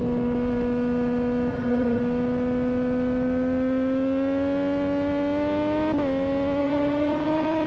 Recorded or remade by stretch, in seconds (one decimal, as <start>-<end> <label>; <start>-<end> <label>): 0.0-1.5 recorded; 1.5-2.0 remade; 2.0-6.6 recorded; 6.6-7.7 remade